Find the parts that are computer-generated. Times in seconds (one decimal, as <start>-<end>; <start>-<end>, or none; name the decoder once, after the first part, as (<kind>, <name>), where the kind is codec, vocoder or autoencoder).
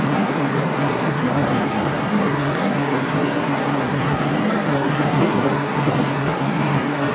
0.0-7.1 (codec, SNAC)